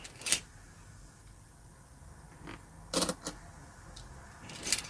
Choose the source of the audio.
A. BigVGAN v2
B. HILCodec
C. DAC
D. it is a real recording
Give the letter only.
D